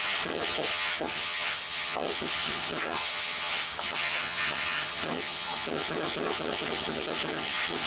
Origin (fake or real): fake